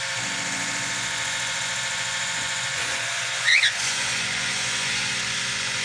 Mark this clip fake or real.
fake